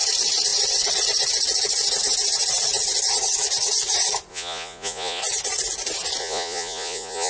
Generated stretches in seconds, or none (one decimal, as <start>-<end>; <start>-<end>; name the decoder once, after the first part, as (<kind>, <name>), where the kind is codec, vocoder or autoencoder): 4.3-5.2 (vocoder, Vocos); 6.2-7.3